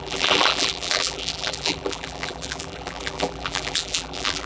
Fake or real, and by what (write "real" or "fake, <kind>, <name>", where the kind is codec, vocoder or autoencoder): fake, vocoder, BigVGAN v2